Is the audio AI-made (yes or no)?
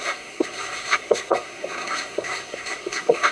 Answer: yes